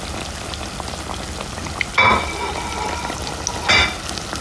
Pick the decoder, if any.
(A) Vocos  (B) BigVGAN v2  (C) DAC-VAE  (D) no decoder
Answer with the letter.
D